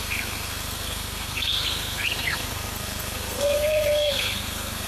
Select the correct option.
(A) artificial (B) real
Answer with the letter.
A